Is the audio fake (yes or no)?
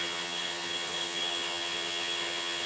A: yes